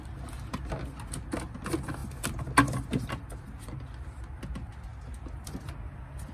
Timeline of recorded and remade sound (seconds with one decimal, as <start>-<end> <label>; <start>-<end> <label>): 0.0-6.3 recorded